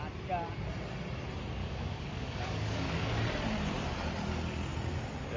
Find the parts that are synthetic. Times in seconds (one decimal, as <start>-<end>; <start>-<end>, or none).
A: 1.6-3.2